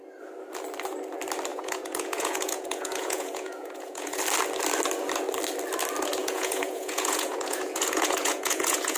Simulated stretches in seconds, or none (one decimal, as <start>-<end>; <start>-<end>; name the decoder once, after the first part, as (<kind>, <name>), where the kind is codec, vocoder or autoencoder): 1.5-4.2 (vocoder, Vocos); 6.2-9.0